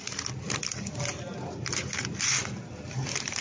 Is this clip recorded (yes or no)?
yes